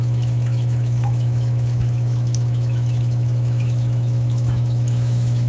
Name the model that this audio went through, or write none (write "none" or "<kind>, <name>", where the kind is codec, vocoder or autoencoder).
autoencoder, DAC-VAE